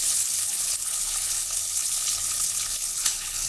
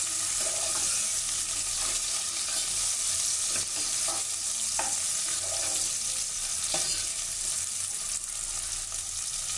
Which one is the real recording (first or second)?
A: second